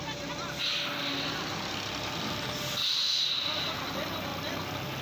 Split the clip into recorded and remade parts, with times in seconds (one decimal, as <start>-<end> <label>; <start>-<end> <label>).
0.0-2.8 recorded; 2.8-3.7 remade; 3.7-5.0 recorded